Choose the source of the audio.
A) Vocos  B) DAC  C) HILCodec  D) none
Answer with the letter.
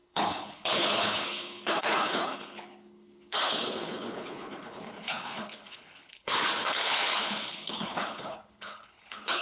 C